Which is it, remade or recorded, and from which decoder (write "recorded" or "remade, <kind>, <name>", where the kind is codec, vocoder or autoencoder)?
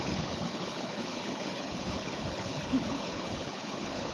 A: remade, codec, HILCodec